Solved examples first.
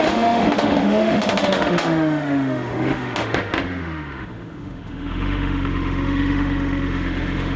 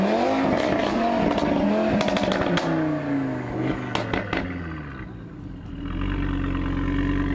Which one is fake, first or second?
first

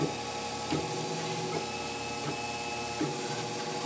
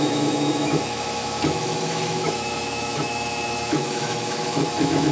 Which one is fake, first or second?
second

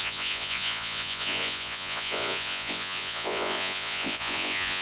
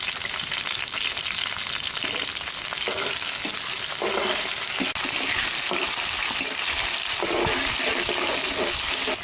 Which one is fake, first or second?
first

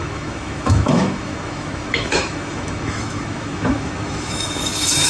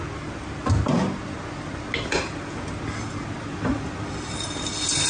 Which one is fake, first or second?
first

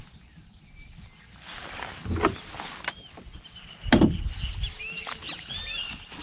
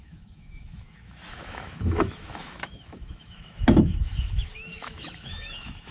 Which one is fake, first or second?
second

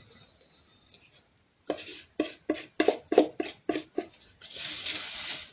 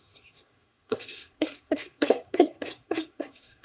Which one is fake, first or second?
second